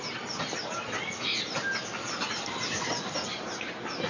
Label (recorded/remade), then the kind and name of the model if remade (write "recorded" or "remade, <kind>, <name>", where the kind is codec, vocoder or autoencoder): recorded